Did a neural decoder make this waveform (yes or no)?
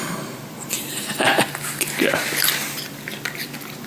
no